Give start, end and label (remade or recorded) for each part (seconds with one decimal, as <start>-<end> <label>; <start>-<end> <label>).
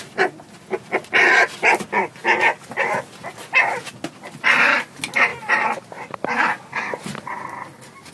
0.0-8.1 recorded